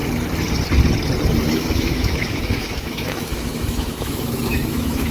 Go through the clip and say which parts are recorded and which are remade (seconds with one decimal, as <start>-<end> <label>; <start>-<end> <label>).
0.0-1.5 recorded; 1.5-5.1 remade